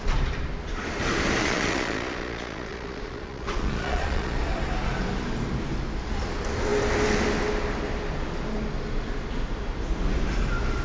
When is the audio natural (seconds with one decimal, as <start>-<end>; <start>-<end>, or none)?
0.0-1.4; 4.4-10.8